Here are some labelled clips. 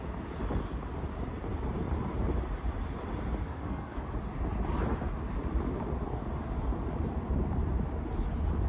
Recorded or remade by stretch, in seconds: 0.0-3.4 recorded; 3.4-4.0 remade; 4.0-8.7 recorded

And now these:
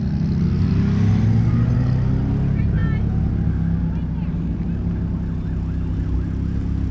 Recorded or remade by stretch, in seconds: 0.0-6.9 recorded

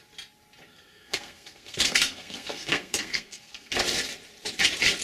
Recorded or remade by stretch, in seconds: 0.0-0.7 recorded; 0.7-3.7 remade; 3.7-5.0 recorded

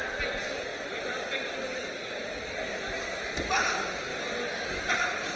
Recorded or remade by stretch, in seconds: 0.0-0.7 recorded; 0.7-1.5 remade; 1.5-5.4 recorded

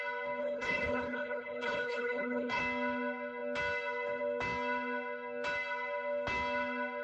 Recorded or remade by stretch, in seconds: 0.0-0.4 recorded; 0.4-2.6 remade; 2.6-7.0 recorded

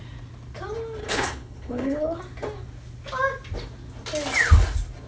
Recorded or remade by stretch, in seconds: 0.0-1.0 recorded; 1.0-2.2 remade; 2.2-5.1 recorded

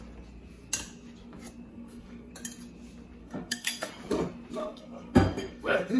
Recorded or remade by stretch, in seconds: 0.0-1.7 recorded; 1.7-2.3 remade; 2.3-3.2 recorded; 3.2-3.9 remade; 3.9-4.6 recorded; 4.6-6.0 remade

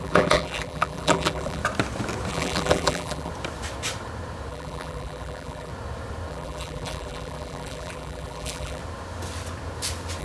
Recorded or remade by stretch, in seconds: 0.0-1.6 remade; 1.6-2.3 recorded; 2.3-3.3 remade; 3.3-4.5 recorded; 4.5-5.7 remade; 5.7-6.3 recorded; 6.3-8.8 remade; 8.8-10.2 recorded